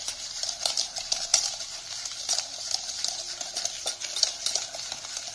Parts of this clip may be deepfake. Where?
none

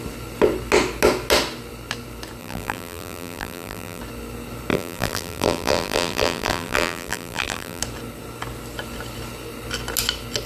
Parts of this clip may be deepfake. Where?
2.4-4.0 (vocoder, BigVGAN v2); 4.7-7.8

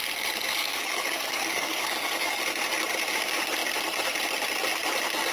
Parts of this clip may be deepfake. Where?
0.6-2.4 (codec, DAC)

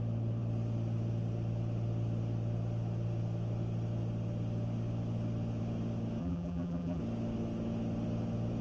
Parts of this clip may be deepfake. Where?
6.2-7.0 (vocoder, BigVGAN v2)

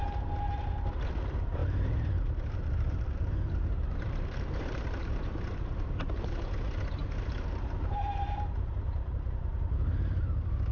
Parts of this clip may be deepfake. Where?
1.6-6.2 (vocoder, BigVGAN v2); 7.0-10.7

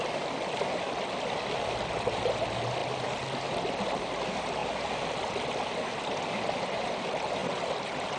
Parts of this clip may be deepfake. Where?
none

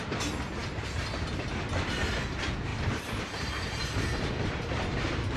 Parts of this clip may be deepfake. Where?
2.7-4.5 (vocoder, BigVGAN v2)